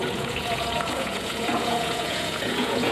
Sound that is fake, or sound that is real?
fake